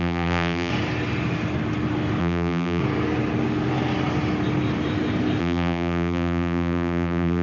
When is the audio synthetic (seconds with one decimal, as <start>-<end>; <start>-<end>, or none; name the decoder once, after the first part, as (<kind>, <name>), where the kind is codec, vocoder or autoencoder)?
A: 0.0-0.7 (vocoder, BigVGAN v2); 2.2-2.8; 5.4-7.4

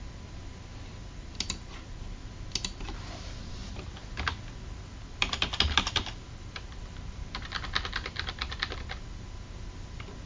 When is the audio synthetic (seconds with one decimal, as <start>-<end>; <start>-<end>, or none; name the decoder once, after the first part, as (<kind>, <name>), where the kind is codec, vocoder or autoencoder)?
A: 1.0-2.2 (vocoder, BigVGAN v2); 3.6-8.3

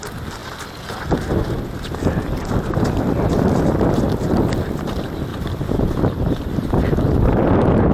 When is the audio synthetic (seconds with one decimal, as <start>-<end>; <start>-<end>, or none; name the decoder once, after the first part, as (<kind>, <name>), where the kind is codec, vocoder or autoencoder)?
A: 5.3-6.4 (vocoder, BigVGAN v2)

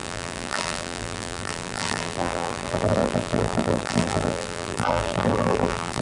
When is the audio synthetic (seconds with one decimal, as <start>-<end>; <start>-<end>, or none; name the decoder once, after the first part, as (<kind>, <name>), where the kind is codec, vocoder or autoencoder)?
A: 0.0-6.0 (vocoder, BigVGAN v2)

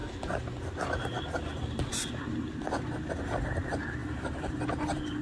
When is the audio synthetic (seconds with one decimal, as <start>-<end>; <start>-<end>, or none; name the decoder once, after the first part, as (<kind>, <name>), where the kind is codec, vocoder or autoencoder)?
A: 4.0-4.6 (vocoder, BigVGAN v2)

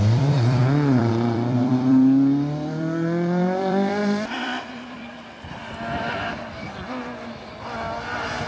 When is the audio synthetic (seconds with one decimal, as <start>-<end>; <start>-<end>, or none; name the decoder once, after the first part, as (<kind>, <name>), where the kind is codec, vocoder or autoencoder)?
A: 0.0-5.6 (vocoder, BigVGAN v2)